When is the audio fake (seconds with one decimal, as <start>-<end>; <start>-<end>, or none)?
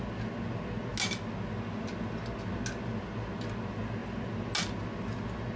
none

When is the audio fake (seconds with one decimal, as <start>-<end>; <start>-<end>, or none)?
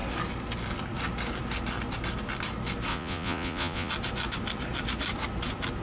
2.9-3.9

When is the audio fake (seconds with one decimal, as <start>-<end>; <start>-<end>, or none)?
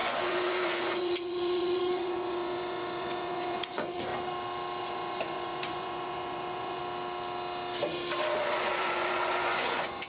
0.0-4.1; 4.8-6.8; 8.5-10.1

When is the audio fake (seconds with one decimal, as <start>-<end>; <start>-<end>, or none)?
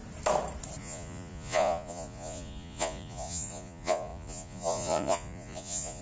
0.8-6.0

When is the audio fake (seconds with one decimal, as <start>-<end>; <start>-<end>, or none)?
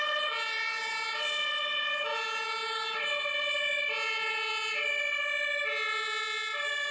none